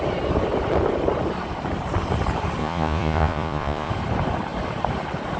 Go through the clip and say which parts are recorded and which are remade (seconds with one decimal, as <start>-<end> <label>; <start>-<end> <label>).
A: 0.0-2.6 recorded; 2.6-3.9 remade; 3.9-5.4 recorded